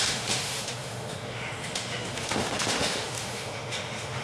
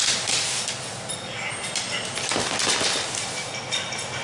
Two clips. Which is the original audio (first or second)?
second